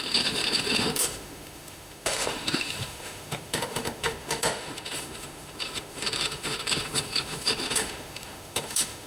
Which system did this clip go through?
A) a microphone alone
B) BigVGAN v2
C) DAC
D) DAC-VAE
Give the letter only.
D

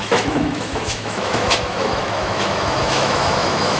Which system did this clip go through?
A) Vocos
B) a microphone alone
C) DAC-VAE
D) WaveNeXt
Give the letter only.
C